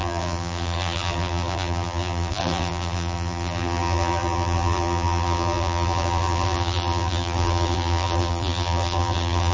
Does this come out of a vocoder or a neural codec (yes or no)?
yes